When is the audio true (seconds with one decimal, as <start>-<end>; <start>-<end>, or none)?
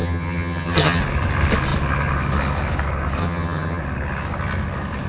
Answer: 1.0-3.2; 3.8-5.1